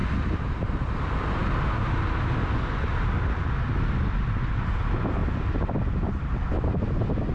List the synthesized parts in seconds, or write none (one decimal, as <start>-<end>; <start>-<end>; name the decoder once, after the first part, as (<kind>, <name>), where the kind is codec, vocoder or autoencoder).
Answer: none